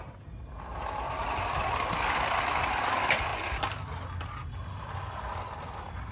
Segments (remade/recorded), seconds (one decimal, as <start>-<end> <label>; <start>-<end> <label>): 0.0-6.1 recorded